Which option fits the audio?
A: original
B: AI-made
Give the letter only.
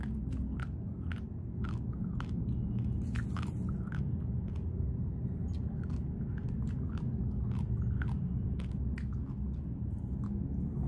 A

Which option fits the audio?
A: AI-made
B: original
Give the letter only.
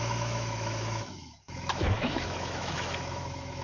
A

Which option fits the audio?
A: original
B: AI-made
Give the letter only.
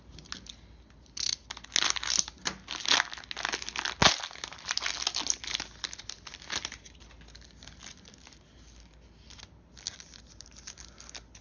A